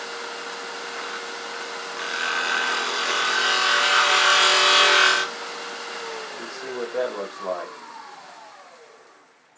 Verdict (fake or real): real